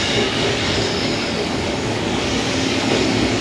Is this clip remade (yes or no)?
yes